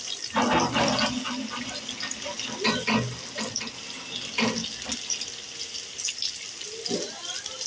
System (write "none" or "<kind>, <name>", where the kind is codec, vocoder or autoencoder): none